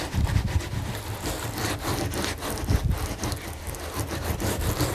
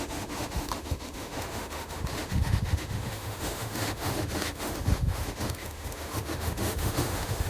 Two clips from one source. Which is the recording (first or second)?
first